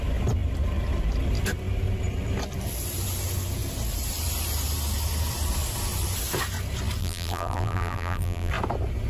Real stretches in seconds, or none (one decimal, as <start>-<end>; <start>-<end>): 0.0-7.0; 8.5-9.1